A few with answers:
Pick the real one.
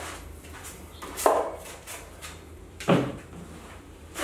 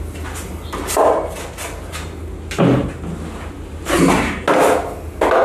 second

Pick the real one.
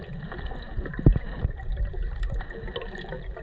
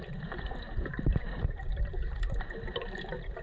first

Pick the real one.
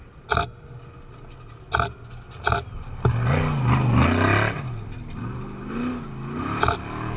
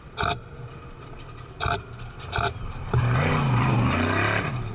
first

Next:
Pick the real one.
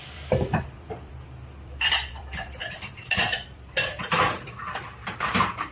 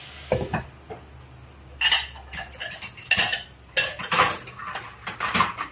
second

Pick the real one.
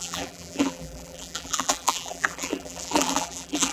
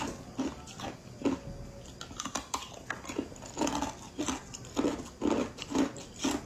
second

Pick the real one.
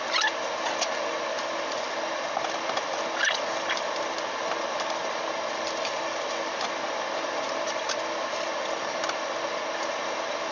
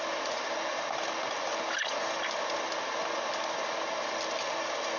second